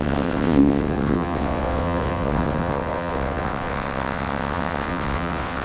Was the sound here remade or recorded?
remade